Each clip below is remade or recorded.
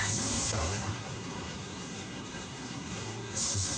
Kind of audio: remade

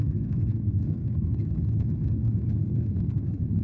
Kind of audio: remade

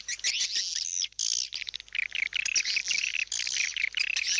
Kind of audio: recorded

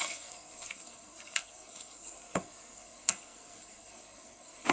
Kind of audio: remade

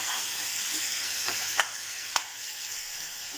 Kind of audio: remade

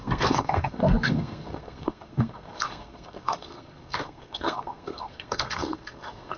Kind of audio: remade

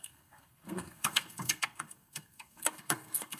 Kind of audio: remade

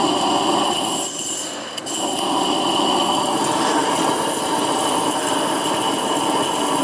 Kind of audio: recorded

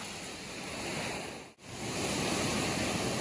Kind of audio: recorded